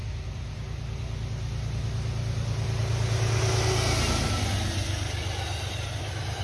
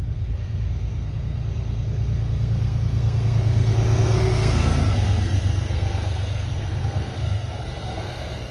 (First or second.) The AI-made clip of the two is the second